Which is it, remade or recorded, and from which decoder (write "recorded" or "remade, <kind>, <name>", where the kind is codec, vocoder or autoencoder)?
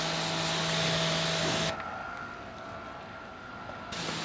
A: recorded